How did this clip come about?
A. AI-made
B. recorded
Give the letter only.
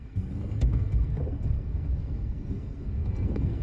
A